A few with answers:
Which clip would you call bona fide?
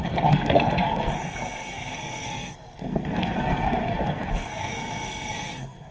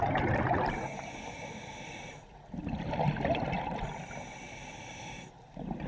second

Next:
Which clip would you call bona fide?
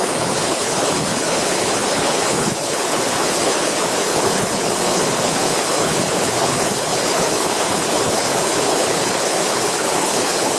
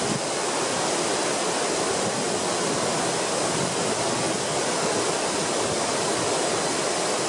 second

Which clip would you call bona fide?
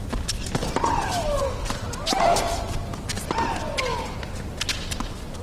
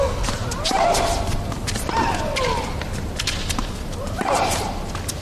first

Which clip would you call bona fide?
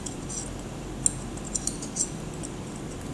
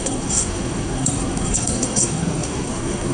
first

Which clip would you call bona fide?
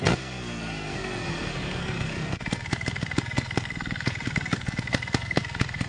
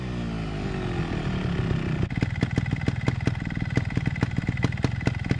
second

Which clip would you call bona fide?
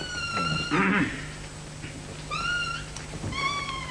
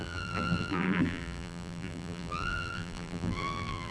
first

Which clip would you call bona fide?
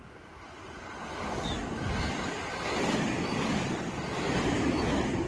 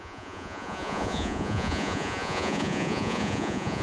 first